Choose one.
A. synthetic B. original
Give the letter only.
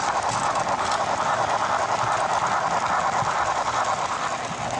B